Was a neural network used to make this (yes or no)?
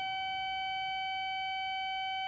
no